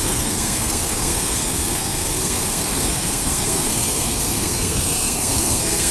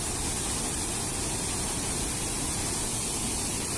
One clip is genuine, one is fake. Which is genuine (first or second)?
second